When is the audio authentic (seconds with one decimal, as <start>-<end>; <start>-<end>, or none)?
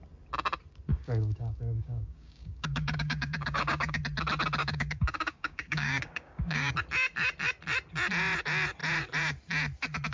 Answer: 0.0-0.9; 4.0-4.6; 6.7-10.1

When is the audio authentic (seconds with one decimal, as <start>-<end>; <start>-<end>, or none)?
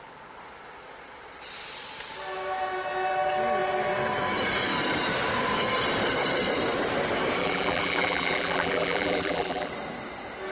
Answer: 0.0-7.4; 9.7-10.5